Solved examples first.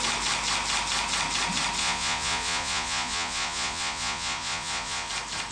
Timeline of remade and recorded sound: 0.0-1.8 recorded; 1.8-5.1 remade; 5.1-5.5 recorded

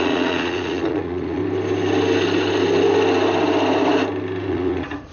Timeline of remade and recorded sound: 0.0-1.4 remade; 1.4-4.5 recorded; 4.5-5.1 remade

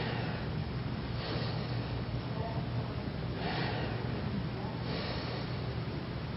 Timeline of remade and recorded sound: 0.0-0.6 recorded; 0.6-2.6 remade; 2.6-6.4 recorded

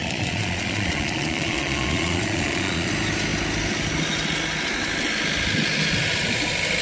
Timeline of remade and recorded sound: 0.0-2.9 remade; 2.9-6.8 recorded

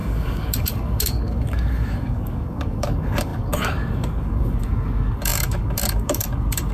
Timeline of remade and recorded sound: 0.0-6.7 remade